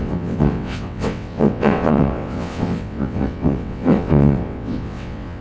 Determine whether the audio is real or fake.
fake